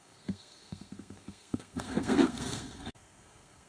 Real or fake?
fake